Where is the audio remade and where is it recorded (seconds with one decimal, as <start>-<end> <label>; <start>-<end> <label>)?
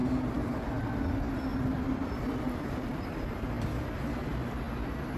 0.0-1.5 recorded; 1.5-4.6 remade; 4.6-5.2 recorded